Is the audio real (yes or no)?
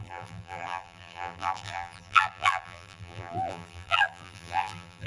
no